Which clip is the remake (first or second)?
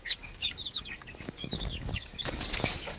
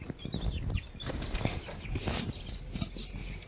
first